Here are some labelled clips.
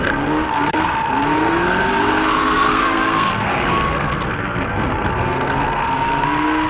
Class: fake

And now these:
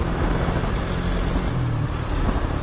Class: real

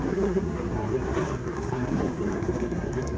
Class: fake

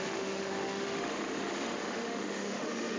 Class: fake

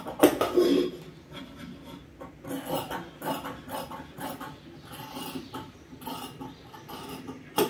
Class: real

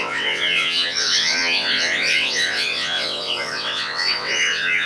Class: fake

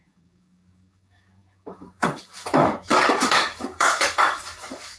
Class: fake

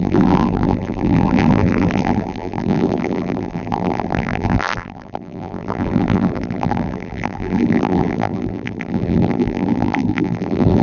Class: fake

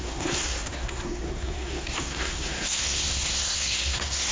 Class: fake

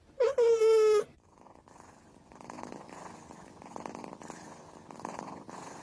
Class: real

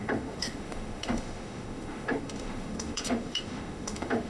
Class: fake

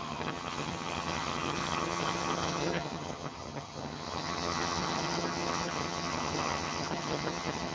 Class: fake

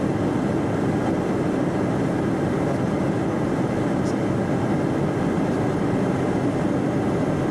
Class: real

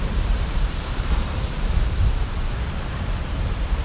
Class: fake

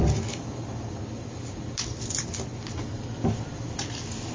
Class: real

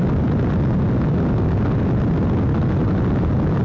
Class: real